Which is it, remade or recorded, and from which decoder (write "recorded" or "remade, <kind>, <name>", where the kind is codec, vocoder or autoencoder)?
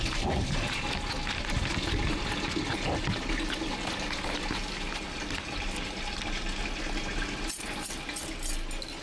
recorded